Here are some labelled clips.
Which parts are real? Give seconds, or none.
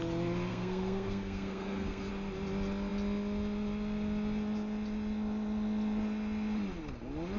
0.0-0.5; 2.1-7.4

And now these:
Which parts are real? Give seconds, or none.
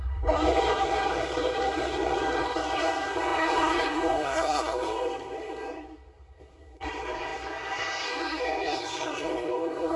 none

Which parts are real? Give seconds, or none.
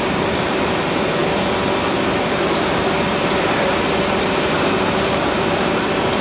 0.0-6.2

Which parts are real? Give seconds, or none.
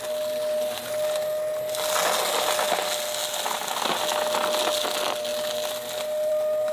0.0-6.7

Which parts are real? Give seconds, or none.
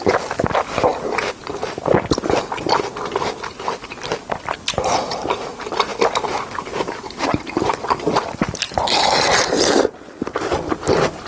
0.0-11.3